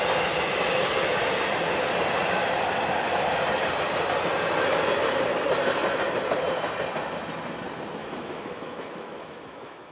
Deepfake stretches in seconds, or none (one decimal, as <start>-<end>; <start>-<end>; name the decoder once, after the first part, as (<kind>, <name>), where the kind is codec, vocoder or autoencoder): 8.0-9.9 (autoencoder, DAC-VAE)